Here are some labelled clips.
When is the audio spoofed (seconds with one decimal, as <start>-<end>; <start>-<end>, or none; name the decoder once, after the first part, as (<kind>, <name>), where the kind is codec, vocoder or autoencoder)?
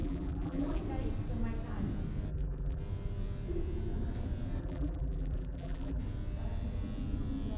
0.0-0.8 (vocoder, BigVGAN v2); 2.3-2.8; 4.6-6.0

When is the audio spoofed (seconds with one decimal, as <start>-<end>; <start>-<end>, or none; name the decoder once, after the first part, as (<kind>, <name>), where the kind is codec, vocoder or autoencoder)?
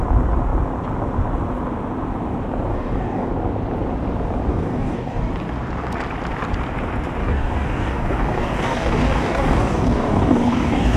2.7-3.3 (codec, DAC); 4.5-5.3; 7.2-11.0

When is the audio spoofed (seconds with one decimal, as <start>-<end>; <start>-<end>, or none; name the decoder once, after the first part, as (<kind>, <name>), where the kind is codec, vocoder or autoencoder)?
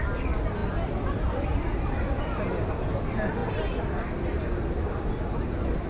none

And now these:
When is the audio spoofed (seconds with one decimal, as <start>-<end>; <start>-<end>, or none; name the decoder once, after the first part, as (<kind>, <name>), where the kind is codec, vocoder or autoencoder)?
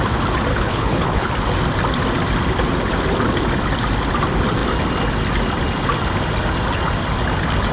0.5-1.3 (codec, HILCodec)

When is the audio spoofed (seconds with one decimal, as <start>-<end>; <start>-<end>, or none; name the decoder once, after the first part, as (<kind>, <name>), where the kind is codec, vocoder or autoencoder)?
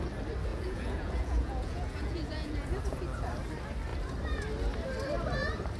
0.5-2.8 (vocoder, Vocos)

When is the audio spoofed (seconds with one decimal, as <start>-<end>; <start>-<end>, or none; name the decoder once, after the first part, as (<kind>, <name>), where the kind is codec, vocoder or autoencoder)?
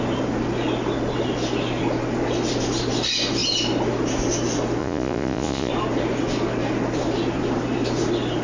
4.8-5.7 (vocoder, Vocos)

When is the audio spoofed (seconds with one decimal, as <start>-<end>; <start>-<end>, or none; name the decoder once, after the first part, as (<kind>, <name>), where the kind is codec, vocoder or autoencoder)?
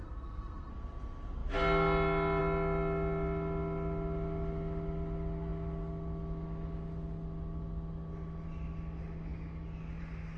0.0-0.7 (codec, SNAC)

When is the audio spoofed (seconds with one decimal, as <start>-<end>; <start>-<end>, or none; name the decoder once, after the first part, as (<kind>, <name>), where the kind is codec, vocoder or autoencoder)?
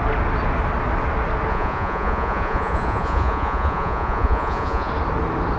1.5-4.9 (vocoder, Vocos)